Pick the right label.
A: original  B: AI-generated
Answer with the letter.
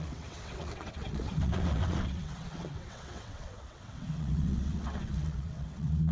B